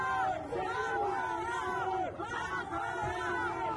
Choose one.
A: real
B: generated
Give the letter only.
A